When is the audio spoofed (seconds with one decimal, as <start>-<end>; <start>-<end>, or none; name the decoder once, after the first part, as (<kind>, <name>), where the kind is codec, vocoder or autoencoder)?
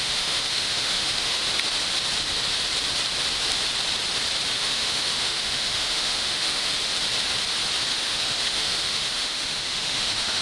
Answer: 0.0-1.4 (autoencoder, DAC-VAE); 4.5-6.8; 7.9-10.4